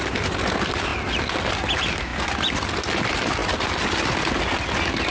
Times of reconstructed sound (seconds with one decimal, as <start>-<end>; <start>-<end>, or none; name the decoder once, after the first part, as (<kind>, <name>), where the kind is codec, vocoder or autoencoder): none